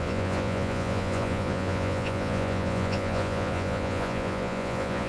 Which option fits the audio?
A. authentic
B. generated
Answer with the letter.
B